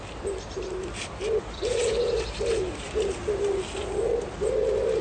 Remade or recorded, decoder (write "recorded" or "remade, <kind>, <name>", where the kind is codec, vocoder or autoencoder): remade, vocoder, BigVGAN v2